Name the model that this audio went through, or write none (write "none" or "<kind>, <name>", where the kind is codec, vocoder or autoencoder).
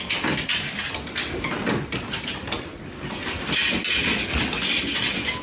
none